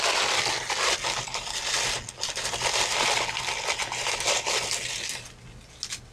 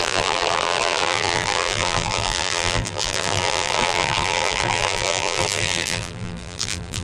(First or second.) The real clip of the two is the first